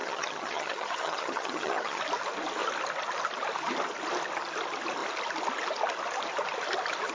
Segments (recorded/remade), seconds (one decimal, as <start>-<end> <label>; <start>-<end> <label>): 0.0-2.0 remade; 2.0-7.1 recorded